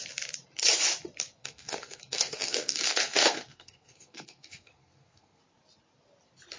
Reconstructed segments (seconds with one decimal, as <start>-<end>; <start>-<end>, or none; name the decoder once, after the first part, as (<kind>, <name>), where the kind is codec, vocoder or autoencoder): 1.4-5.4 (codec, SNAC)